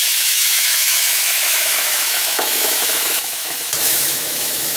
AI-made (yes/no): yes